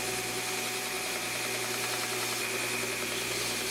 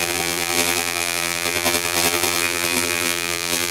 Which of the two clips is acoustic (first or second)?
first